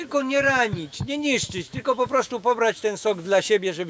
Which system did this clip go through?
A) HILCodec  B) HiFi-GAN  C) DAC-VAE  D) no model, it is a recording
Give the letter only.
C